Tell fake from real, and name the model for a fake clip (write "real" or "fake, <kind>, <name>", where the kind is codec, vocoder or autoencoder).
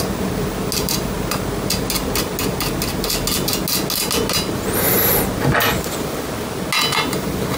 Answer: real